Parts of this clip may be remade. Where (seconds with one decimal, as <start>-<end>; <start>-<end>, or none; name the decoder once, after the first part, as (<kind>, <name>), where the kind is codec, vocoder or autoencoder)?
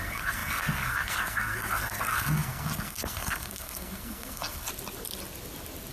0.0-4.7 (codec, SNAC)